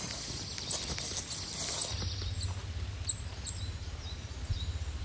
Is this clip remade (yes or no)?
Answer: no